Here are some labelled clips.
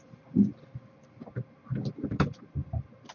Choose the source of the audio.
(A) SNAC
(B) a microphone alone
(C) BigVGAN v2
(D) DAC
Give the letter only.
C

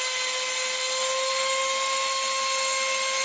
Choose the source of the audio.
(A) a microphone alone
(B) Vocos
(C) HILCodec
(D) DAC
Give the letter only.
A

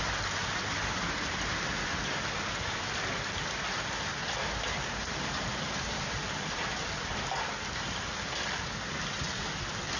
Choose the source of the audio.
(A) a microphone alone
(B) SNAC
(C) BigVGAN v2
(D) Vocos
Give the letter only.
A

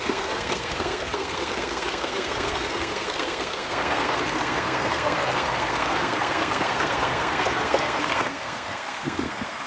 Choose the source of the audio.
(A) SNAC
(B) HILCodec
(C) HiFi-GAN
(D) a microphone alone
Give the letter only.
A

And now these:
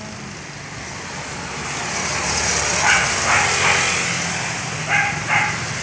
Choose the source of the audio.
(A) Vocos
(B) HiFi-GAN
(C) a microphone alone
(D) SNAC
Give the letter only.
C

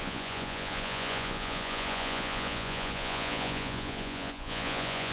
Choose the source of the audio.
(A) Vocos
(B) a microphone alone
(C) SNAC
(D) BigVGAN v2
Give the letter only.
A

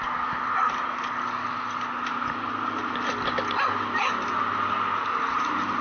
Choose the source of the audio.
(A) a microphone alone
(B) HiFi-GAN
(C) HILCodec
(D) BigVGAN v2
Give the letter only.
A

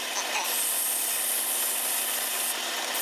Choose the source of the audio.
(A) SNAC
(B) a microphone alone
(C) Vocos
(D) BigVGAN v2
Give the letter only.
B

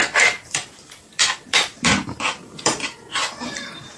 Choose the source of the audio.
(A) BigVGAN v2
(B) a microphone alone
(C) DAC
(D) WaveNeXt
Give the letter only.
A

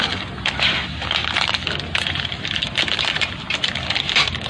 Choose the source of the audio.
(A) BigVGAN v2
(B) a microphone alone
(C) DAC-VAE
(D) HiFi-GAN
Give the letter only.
B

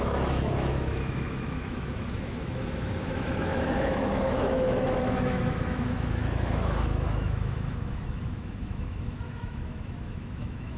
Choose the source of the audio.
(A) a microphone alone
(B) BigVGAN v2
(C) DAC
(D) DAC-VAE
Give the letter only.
D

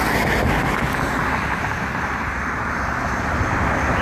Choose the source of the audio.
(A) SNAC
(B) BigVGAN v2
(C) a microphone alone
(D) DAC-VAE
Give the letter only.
C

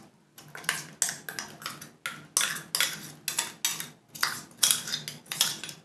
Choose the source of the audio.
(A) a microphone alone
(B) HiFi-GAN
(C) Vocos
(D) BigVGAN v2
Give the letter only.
A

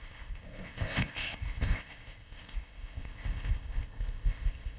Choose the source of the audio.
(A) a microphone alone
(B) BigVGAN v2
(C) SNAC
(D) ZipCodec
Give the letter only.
D